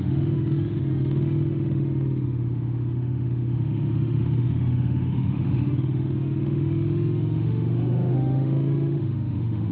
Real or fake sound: fake